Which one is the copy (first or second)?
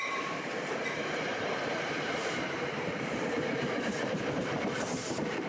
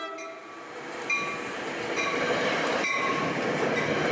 first